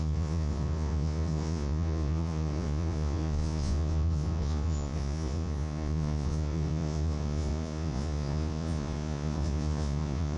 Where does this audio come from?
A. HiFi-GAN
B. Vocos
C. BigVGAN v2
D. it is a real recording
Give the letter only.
B